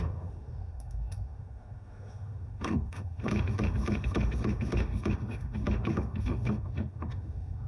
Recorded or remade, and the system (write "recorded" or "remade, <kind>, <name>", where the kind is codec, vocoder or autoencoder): remade, autoencoder, DAC-VAE